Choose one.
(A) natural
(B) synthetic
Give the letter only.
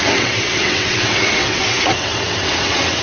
B